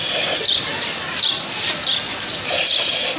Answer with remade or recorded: recorded